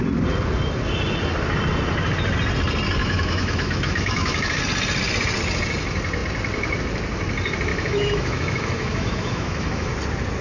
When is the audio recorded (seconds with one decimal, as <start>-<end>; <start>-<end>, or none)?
0.0-3.0; 4.6-7.7; 9.9-10.4